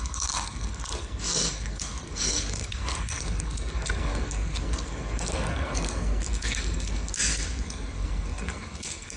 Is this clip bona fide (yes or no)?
no